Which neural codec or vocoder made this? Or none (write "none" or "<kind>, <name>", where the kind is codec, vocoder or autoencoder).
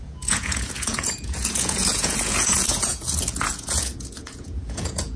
vocoder, Vocos